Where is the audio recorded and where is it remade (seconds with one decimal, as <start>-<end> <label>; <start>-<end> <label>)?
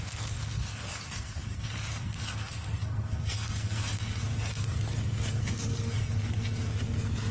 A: 0.0-7.3 remade